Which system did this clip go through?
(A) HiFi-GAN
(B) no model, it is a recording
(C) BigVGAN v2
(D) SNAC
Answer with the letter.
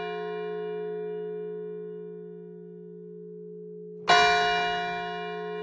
B